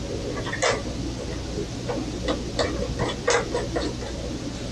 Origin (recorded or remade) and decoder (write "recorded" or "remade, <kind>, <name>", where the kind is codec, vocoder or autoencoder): recorded